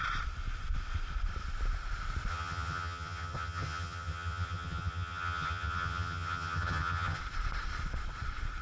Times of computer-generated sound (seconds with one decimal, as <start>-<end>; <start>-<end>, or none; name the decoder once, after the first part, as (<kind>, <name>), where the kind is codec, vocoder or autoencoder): 2.3-7.2 (vocoder, HiFi-GAN)